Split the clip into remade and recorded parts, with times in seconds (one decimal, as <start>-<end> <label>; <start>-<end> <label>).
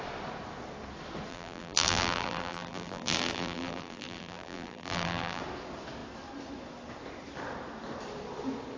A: 0.0-1.3 recorded; 1.3-5.4 remade; 5.4-8.8 recorded